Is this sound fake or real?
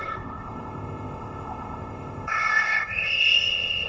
fake